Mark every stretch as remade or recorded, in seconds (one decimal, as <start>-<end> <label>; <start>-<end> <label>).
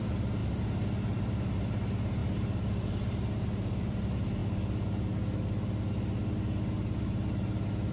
0.0-2.2 recorded; 2.2-4.0 remade; 4.0-7.9 recorded